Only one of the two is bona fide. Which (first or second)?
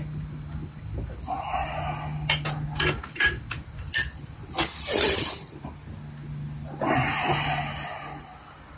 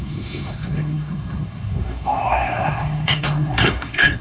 first